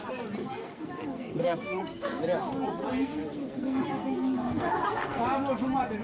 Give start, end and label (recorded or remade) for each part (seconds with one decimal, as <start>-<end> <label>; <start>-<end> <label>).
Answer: 0.0-0.4 recorded; 0.4-2.2 remade; 2.2-2.9 recorded; 2.9-5.2 remade; 5.2-6.0 recorded